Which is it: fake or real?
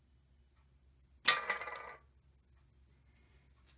real